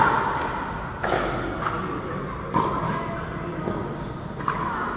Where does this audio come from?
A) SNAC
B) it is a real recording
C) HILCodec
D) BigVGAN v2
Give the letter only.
B